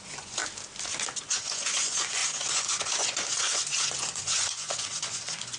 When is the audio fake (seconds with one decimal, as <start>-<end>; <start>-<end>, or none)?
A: 0.0-0.4; 1.2-5.6